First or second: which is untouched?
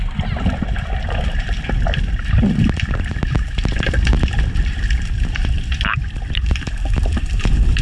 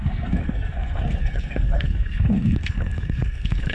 first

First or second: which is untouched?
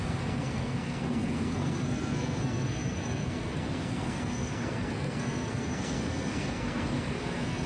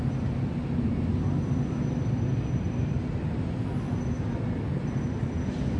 second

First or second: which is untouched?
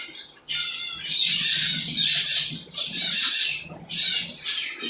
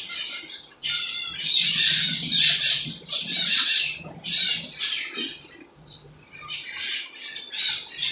first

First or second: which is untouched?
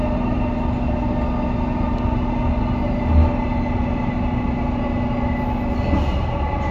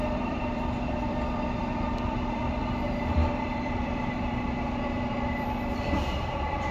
first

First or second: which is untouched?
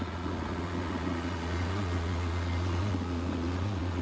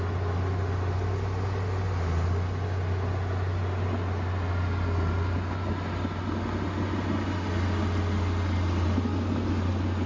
second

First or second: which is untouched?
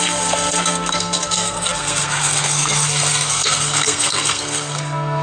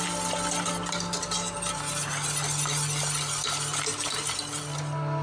second